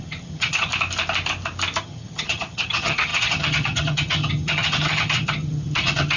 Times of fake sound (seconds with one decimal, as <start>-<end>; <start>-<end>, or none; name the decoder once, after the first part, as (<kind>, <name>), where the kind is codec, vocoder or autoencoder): 0.0-0.7 (vocoder, HiFi-GAN); 1.8-6.2